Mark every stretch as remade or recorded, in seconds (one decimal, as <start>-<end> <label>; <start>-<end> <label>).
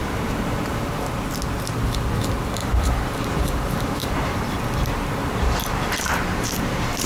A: 0.0-1.3 remade; 1.3-2.6 recorded; 2.6-7.1 remade